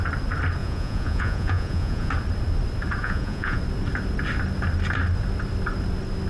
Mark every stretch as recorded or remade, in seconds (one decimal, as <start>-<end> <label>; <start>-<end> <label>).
0.0-0.6 recorded; 0.6-2.1 remade; 2.1-3.0 recorded; 3.0-3.6 remade; 3.6-6.3 recorded